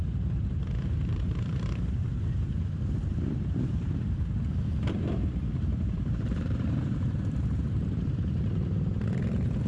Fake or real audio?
fake